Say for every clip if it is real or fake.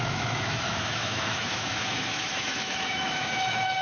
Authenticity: fake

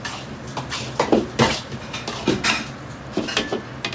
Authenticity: real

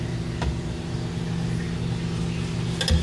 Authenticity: real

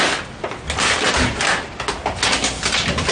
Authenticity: real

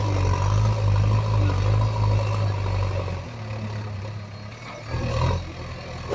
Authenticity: real